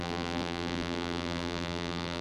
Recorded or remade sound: remade